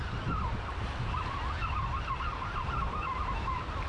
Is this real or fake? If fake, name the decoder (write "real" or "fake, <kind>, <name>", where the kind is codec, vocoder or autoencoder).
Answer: real